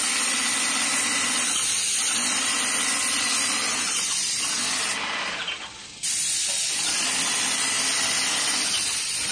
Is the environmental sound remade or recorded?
recorded